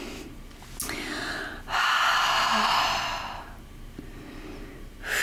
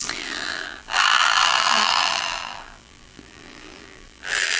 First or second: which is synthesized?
second